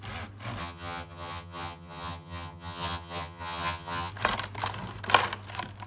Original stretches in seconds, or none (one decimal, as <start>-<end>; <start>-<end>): 0.0-0.6; 4.1-5.9